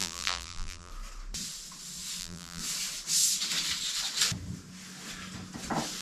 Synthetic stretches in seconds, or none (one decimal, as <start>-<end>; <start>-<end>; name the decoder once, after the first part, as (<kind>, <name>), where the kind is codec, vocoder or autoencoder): 0.0-0.9 (vocoder, BigVGAN v2); 2.2-2.6